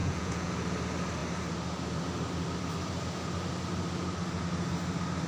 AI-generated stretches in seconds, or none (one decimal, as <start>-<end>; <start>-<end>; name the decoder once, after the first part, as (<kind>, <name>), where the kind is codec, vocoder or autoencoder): 0.0-0.5 (vocoder, Vocos)